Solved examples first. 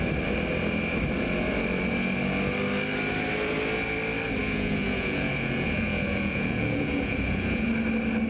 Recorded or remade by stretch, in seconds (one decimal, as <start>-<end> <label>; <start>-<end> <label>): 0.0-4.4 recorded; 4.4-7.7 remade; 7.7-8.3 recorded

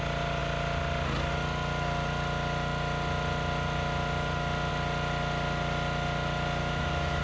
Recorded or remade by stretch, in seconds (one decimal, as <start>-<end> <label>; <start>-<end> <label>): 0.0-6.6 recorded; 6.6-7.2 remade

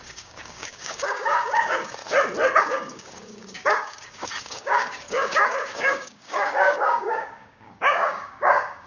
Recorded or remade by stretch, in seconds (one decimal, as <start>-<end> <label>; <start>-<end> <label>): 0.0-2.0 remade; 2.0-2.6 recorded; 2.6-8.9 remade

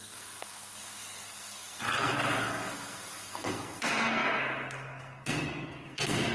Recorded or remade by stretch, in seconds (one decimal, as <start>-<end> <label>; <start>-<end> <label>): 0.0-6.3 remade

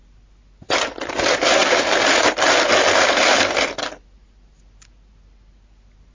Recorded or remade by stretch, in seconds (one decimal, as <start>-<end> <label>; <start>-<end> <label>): 0.0-6.1 recorded

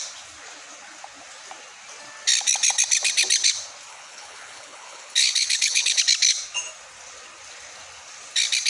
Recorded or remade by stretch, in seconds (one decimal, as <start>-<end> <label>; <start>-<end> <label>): 0.0-3.9 recorded; 3.9-6.0 remade; 6.0-8.7 recorded